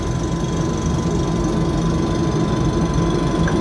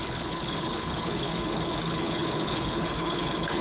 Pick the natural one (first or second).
first